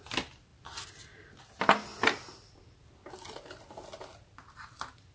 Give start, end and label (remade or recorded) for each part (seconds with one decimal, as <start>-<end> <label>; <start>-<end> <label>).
0.0-5.1 recorded